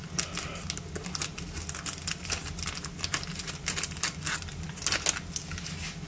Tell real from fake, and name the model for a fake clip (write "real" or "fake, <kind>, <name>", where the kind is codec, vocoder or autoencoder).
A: real